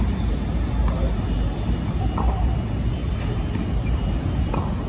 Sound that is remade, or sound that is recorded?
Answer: recorded